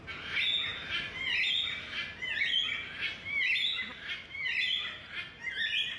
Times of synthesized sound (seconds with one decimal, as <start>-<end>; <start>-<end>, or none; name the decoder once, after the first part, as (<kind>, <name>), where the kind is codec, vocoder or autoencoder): none